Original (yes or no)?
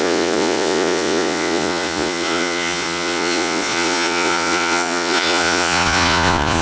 no